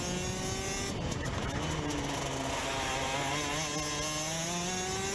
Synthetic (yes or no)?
no